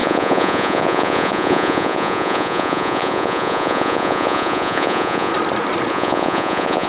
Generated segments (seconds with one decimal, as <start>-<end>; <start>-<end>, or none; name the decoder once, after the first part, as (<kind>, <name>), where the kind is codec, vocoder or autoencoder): 0.0-5.3 (vocoder, Vocos); 5.9-6.9